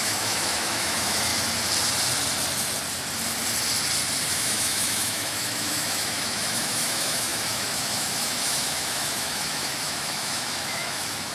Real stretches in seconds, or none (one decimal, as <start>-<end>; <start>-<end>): 1.3-4.3

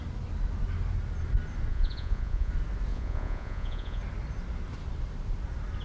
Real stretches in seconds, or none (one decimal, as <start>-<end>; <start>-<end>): 0.0-1.7; 2.5-2.9; 4.0-5.8

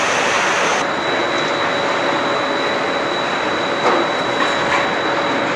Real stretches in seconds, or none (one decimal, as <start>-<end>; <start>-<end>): 0.0-5.6

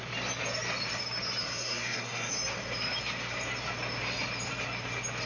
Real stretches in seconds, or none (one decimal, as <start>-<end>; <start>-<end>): 0.0-1.4; 2.3-5.3